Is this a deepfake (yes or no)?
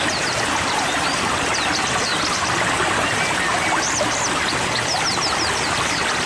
no